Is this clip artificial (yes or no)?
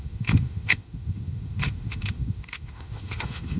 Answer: yes